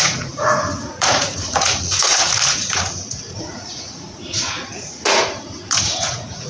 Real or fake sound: fake